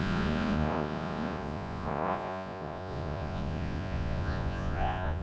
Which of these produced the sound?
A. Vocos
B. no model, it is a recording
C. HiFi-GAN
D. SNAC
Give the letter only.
A